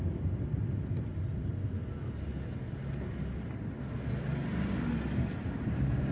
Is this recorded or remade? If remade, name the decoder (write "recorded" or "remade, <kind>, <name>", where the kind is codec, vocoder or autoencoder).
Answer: recorded